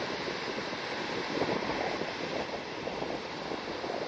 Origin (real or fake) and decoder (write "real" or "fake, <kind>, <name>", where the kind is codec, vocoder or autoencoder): real